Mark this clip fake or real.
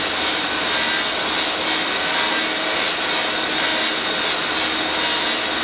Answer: real